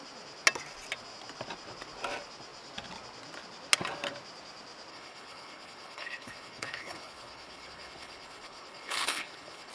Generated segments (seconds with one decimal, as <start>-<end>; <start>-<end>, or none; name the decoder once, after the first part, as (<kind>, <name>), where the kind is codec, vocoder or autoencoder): 4.9-9.7 (codec, HILCodec)